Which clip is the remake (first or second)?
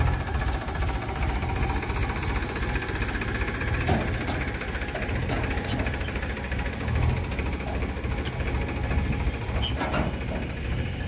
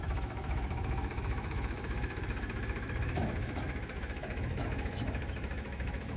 second